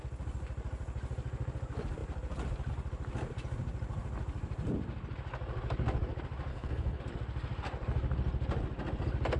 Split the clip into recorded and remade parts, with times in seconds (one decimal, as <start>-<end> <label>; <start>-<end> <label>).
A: 0.0-6.5 recorded; 6.5-7.0 remade; 7.0-9.4 recorded